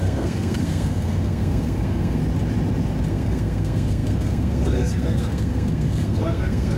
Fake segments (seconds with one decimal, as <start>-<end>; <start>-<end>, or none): 0.0-2.2; 3.1-6.8